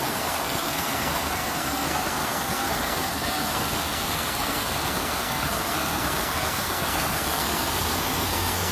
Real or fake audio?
fake